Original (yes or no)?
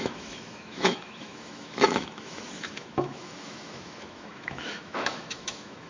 no